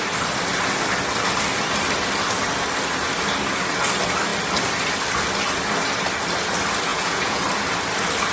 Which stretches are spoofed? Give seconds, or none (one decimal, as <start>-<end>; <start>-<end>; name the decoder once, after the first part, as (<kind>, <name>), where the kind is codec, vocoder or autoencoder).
6.9-7.4 (vocoder, Vocos)